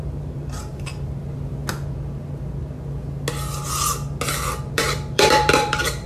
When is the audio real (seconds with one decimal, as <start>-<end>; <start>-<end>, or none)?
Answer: 0.9-4.6